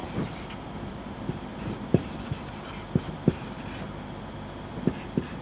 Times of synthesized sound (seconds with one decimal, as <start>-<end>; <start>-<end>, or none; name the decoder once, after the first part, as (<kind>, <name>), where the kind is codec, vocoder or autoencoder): none